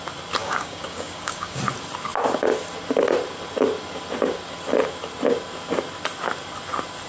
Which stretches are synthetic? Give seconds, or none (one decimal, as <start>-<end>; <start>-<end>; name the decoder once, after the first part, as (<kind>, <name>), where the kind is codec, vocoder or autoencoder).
0.4-1.6 (codec, DAC)